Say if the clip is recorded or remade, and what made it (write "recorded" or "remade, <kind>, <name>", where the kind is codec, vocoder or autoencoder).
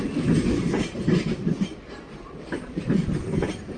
recorded